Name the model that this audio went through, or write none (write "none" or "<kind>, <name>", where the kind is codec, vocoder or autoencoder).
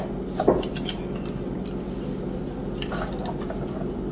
none